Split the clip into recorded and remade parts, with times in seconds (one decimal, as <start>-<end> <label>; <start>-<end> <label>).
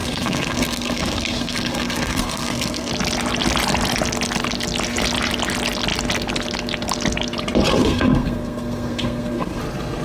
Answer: 0.0-2.9 remade; 2.9-7.8 recorded; 7.8-9.6 remade; 9.6-10.0 recorded